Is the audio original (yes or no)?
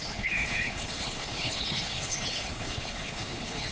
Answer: no